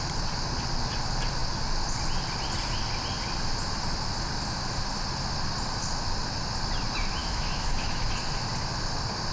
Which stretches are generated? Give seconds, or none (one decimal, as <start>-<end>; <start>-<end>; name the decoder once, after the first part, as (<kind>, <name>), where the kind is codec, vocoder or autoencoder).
7.2-8.1 (autoencoder, DAC-VAE)